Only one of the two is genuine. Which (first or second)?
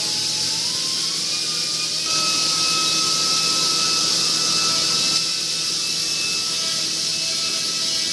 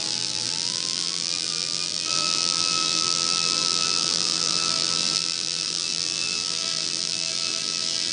first